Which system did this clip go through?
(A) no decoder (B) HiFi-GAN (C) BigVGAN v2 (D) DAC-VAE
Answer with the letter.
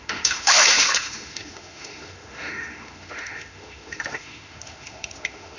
D